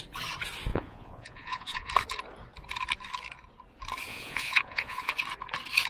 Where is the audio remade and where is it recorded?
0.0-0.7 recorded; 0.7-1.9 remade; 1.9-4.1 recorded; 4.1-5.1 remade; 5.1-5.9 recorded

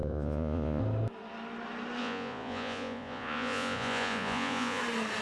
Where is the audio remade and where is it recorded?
0.0-0.8 remade; 0.8-2.0 recorded; 2.0-4.8 remade; 4.8-5.2 recorded

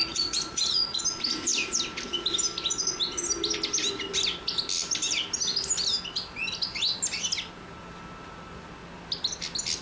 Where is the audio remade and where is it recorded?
0.0-1.0 remade; 1.0-9.8 recorded

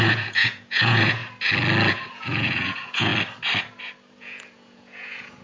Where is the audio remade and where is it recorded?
0.0-1.2 remade; 1.2-1.9 recorded; 1.9-3.1 remade; 3.1-4.2 recorded; 4.2-5.4 remade

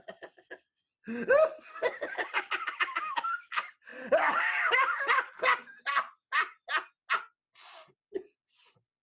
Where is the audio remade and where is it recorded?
0.0-9.0 recorded

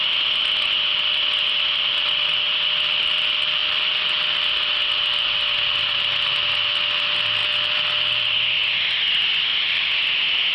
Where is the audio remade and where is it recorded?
0.0-10.5 recorded